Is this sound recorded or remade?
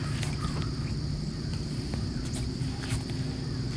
recorded